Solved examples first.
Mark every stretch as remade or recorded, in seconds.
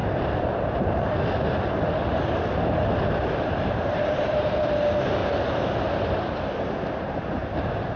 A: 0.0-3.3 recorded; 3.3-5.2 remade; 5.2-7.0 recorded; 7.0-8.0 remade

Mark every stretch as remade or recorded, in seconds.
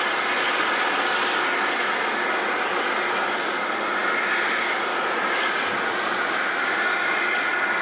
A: 0.0-7.8 recorded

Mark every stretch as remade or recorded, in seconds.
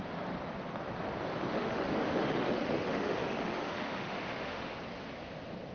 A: 0.0-1.4 recorded; 1.4-4.8 remade; 4.8-5.7 recorded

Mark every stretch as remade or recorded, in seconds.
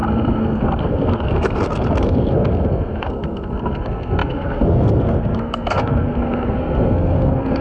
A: 0.0-7.6 remade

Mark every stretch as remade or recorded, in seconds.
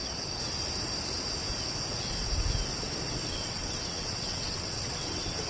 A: 0.0-3.3 recorded; 3.3-5.5 remade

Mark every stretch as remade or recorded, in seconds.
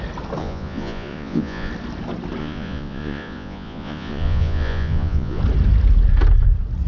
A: 0.0-0.4 recorded; 0.4-1.7 remade; 1.7-2.4 recorded; 2.4-5.4 remade; 5.4-6.9 recorded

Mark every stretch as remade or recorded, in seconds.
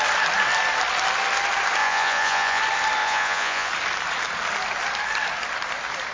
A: 0.0-1.8 recorded; 1.8-2.6 remade; 2.6-3.0 recorded; 3.0-3.7 remade; 3.7-6.1 recorded